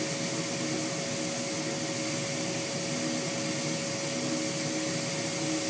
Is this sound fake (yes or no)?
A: no